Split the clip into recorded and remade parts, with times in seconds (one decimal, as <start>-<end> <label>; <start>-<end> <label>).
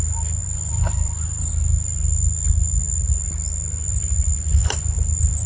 0.0-0.4 recorded; 0.4-1.5 remade; 1.5-5.5 recorded